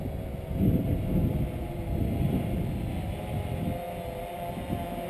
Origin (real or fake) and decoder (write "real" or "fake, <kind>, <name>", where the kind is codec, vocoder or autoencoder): real